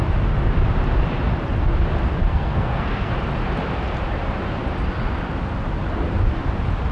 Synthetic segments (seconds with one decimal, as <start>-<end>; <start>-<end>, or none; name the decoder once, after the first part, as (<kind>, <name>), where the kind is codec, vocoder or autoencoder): 2.2-3.1 (codec, SNAC)